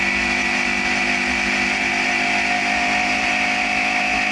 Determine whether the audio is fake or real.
real